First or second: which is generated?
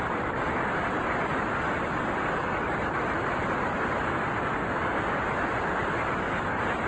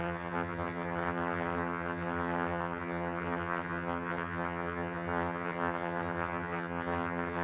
second